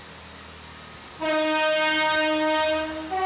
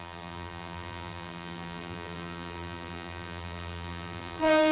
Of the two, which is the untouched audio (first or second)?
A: first